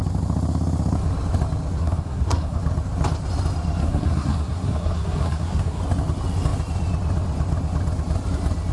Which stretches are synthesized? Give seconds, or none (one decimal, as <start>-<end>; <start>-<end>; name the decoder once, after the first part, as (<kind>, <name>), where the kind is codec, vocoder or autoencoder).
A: 1.8-2.6 (codec, SNAC); 3.8-5.8